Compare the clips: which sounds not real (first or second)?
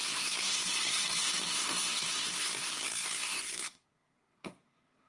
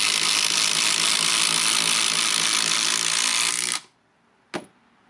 first